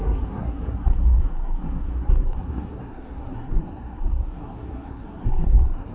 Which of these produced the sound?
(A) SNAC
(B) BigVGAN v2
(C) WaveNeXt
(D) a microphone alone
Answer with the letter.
A